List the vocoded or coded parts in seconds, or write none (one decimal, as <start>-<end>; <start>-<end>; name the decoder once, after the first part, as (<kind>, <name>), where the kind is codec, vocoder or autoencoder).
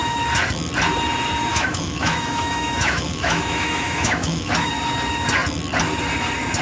1.5-4.7 (autoencoder, DAC-VAE)